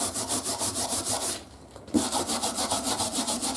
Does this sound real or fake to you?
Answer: fake